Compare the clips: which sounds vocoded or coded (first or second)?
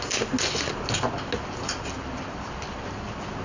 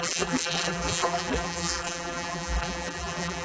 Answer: second